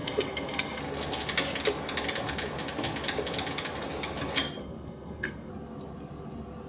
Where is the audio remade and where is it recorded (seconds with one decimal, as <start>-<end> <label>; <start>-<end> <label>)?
0.0-0.8 remade; 0.8-4.6 recorded; 4.6-5.5 remade; 5.5-6.7 recorded